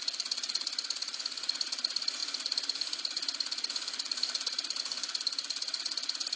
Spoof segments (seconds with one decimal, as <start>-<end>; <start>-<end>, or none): none